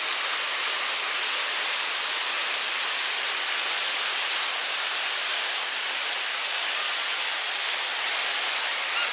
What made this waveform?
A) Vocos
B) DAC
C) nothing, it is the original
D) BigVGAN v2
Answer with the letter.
C